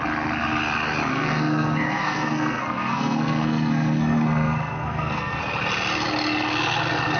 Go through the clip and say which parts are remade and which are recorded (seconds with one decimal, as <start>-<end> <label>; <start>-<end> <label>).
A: 0.0-1.1 recorded; 1.1-5.4 remade; 5.4-7.2 recorded